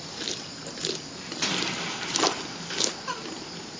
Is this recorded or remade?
recorded